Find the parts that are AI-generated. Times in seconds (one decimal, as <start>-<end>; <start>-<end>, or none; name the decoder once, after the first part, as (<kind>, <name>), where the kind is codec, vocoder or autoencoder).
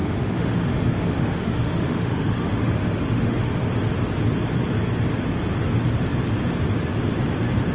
0.0-3.5 (autoencoder, DAC-VAE)